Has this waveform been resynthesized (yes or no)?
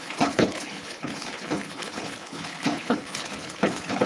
yes